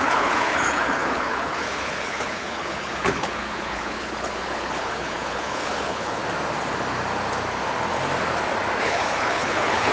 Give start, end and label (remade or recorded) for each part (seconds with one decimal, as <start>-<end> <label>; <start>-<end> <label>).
0.0-6.2 remade; 6.2-8.8 recorded; 8.8-9.9 remade